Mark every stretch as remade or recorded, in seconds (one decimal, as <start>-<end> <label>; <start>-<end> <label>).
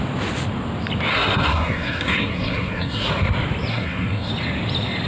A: 0.0-1.1 recorded; 1.1-3.1 remade; 3.1-3.7 recorded; 3.7-4.3 remade; 4.3-5.1 recorded